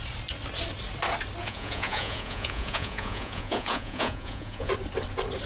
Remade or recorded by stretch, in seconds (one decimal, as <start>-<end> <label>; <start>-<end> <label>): 0.0-1.4 recorded; 1.4-4.7 remade; 4.7-5.5 recorded